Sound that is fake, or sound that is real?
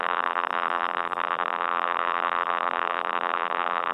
fake